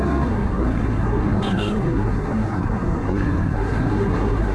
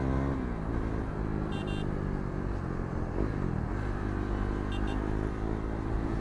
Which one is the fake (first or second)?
first